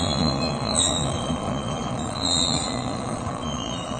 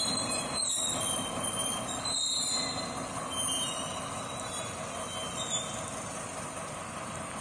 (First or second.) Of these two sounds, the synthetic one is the first